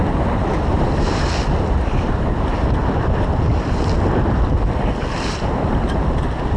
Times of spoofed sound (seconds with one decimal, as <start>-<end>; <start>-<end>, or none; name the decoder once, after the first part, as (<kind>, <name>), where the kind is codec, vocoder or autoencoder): 0.0-1.3 (vocoder, BigVGAN v2); 2.8-5.5